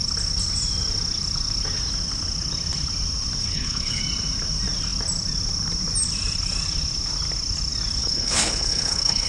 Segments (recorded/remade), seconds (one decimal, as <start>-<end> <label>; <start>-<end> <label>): 0.0-3.4 recorded; 3.4-4.0 remade; 4.0-8.0 recorded; 8.0-9.3 remade